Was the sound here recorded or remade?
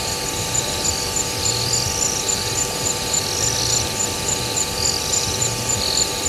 remade